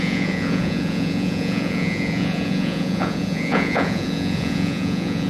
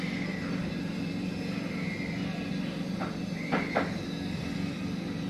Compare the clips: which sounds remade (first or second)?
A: first